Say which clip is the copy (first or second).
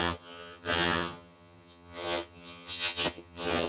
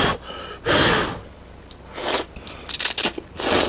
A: first